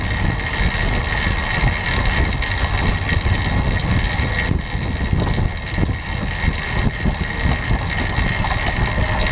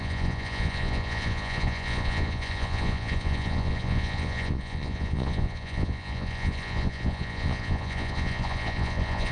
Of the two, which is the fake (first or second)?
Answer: second